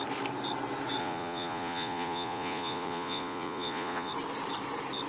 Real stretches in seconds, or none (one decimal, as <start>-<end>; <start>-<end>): 0.0-1.0; 4.1-5.1